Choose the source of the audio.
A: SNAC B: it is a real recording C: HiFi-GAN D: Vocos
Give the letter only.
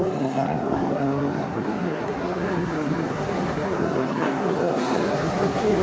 A